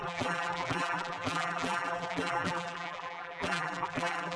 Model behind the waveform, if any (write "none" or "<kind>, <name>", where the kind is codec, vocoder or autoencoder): vocoder, BigVGAN v2